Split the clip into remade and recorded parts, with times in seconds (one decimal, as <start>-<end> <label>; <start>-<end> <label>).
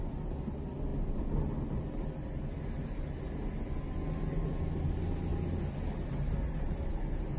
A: 0.0-7.4 recorded